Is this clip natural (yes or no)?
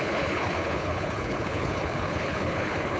no